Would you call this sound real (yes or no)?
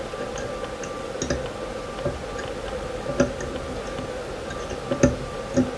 yes